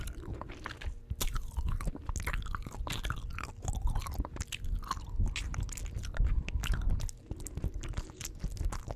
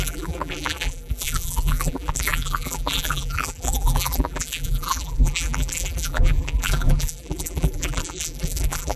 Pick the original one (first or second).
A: first